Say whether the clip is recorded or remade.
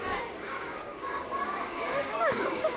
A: remade